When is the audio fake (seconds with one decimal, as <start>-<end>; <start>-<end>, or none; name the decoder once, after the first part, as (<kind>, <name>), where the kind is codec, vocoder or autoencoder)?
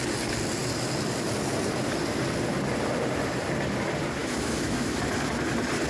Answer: 4.2-5.0 (autoencoder, DAC-VAE)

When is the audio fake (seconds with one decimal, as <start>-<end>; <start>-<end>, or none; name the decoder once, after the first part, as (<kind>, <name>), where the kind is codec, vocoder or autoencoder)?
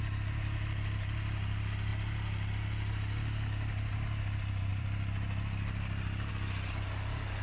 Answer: 4.7-6.3 (vocoder, BigVGAN v2)